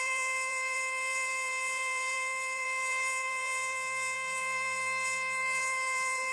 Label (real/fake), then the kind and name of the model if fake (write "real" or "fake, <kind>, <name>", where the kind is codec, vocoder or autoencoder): fake, vocoder, BigVGAN v2